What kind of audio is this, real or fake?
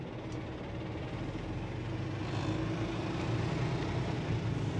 real